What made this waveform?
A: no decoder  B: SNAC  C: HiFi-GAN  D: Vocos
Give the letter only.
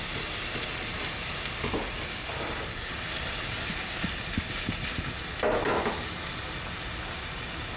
A